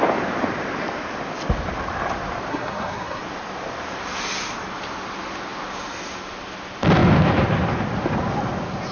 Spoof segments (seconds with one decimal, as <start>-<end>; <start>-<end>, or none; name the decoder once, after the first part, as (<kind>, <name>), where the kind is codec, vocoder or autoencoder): 2.5-3.2 (codec, SNAC)